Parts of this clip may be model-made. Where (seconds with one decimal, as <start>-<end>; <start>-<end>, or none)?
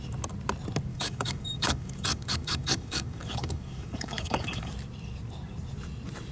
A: 0.9-4.7